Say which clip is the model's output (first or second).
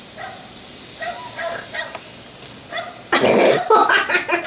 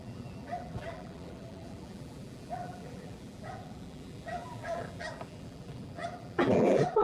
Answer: second